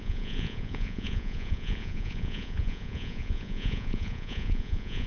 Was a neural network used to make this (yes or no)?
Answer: yes